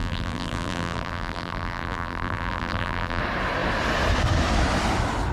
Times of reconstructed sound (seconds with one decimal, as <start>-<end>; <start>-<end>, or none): 0.0-3.2